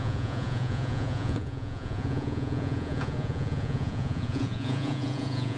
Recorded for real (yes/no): no